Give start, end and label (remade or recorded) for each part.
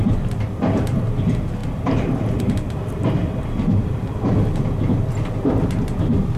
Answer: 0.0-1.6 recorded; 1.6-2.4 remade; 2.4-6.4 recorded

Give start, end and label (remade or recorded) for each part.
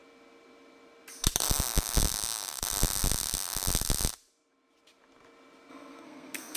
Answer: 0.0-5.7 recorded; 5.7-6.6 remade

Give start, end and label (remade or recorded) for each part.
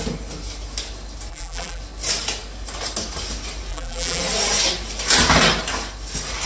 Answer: 0.0-1.3 recorded; 1.3-1.8 remade; 1.8-3.7 recorded; 3.7-4.2 remade; 4.2-6.5 recorded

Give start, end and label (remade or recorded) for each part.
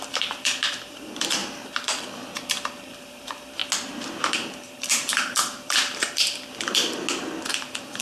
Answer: 0.0-3.6 remade; 3.6-4.3 recorded; 4.3-6.8 remade; 6.8-7.5 recorded; 7.5-8.0 remade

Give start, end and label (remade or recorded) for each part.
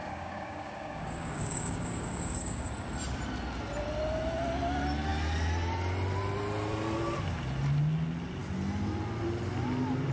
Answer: 0.0-2.7 remade; 2.7-10.1 recorded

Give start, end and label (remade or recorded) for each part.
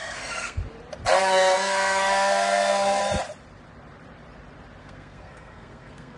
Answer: 0.0-0.6 remade; 0.6-1.2 recorded; 1.2-3.0 remade; 3.0-4.8 recorded; 4.8-6.2 remade